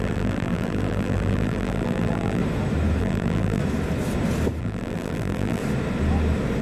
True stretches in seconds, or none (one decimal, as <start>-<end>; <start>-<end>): 2.4-3.0; 3.6-4.6; 5.6-6.6